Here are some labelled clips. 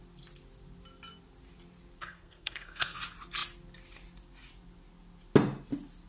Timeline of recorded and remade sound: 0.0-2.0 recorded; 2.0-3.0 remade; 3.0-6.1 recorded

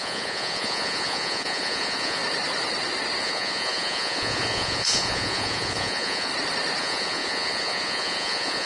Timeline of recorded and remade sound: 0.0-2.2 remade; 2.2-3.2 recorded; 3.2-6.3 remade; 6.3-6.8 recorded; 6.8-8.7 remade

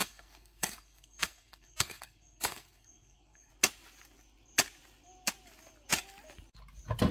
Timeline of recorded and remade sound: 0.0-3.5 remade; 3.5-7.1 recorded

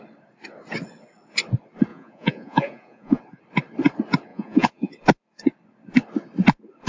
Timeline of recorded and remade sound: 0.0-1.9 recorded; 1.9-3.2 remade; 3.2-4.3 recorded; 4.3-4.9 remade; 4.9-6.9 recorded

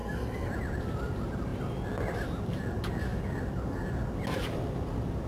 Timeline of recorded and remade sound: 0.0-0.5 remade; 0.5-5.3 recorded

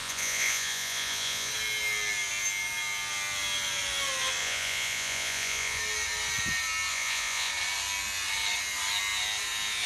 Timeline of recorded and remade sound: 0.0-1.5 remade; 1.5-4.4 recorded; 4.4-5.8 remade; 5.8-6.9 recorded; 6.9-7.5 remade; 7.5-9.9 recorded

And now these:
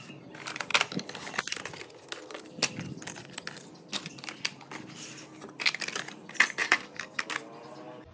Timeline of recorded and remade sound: 0.0-6.6 recorded; 6.6-7.3 remade; 7.3-8.1 recorded